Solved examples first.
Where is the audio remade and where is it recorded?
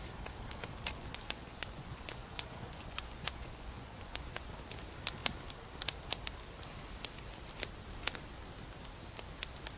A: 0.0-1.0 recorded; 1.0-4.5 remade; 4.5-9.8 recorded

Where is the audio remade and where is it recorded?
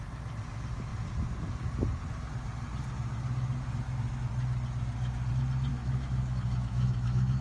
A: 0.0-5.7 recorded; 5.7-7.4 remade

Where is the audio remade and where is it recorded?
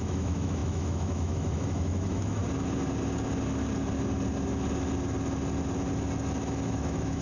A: 0.0-2.4 remade; 2.4-6.7 recorded; 6.7-7.2 remade